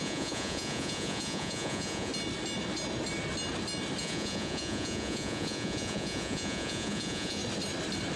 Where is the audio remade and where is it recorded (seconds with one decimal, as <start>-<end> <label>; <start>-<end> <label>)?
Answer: 0.0-2.1 remade; 2.1-4.0 recorded; 4.0-7.4 remade; 7.4-8.2 recorded